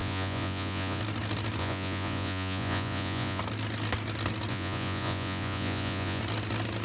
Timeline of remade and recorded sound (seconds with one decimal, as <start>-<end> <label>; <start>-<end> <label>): 0.0-1.0 remade; 1.0-1.6 recorded; 1.6-3.4 remade; 3.4-4.5 recorded; 4.5-6.2 remade; 6.2-6.8 recorded